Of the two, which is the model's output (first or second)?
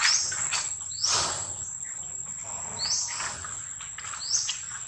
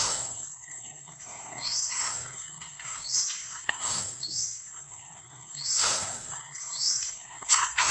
second